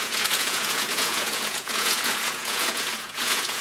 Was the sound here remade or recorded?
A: remade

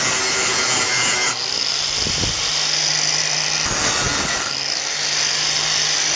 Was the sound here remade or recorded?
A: recorded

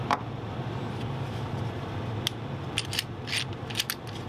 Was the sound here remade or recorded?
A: recorded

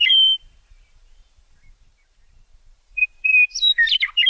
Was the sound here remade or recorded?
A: remade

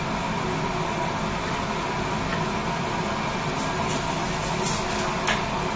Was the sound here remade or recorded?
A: recorded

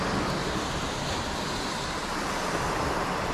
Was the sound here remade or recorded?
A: recorded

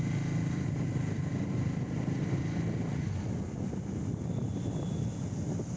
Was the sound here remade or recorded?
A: recorded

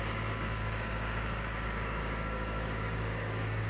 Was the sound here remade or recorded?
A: remade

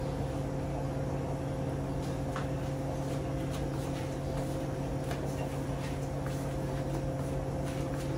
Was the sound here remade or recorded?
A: recorded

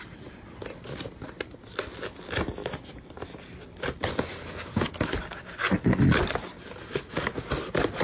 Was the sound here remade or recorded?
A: recorded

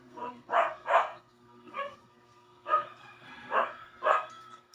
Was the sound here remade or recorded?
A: remade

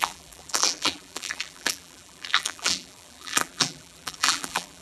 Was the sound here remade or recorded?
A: remade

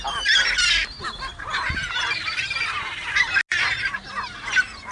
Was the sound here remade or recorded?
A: recorded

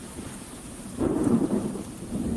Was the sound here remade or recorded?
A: remade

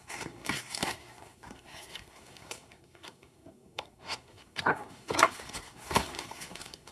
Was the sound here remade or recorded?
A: remade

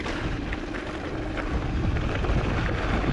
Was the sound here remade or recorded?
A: recorded